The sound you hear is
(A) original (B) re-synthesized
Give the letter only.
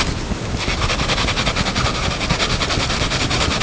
A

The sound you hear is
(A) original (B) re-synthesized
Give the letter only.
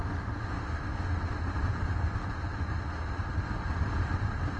A